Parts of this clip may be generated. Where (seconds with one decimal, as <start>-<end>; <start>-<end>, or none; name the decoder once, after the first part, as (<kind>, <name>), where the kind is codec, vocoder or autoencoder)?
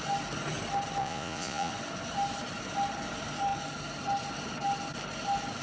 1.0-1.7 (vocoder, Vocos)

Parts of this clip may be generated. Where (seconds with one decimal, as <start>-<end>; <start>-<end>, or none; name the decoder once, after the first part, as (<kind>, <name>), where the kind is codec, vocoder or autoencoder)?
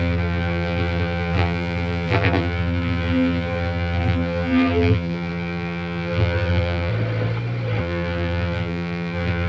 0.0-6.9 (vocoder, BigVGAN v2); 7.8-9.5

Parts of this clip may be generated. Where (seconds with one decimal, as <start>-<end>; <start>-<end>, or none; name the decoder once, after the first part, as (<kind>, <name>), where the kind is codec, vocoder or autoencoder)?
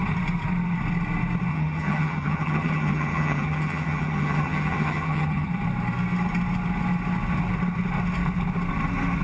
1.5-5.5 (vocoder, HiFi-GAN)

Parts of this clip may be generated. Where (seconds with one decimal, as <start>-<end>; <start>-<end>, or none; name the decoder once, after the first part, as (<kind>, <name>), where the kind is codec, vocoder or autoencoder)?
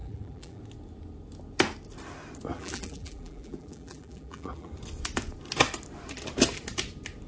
0.0-0.6 (vocoder, BigVGAN v2); 2.5-4.7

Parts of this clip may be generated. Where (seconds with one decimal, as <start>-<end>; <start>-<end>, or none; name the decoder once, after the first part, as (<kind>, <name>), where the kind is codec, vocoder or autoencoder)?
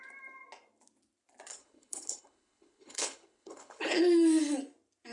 1.5-4.0 (codec, HILCodec)